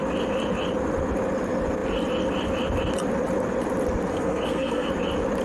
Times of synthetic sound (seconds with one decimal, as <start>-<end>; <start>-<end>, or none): 4.1-4.9